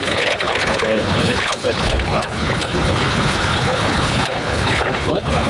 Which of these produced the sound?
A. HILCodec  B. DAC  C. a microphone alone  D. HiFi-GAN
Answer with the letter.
A